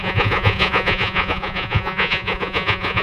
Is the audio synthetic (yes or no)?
yes